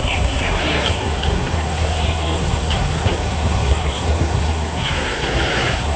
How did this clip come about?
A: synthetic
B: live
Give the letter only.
A